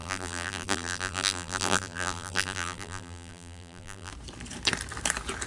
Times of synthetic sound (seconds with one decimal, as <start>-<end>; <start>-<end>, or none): 0.0-4.1